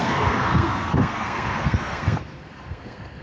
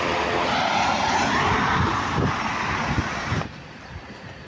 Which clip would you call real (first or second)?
second